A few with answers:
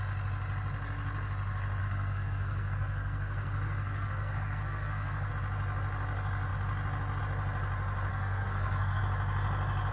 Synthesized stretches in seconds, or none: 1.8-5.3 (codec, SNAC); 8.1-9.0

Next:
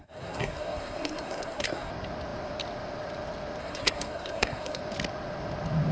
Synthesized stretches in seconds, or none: 0.0-1.9 (codec, SNAC); 3.6-4.8

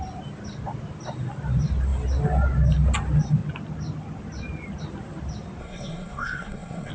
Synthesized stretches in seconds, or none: 5.6-6.9 (codec, SNAC)

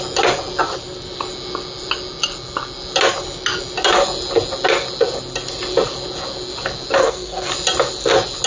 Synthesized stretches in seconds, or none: 7.0-7.5 (codec, SNAC)

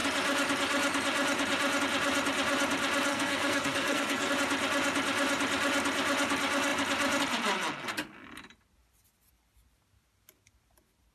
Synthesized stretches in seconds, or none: 3.1-4.3 (codec, SNAC)